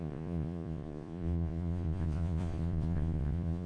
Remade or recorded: remade